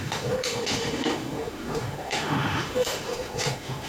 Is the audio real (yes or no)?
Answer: no